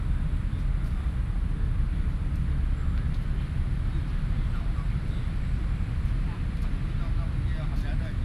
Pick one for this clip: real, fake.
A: real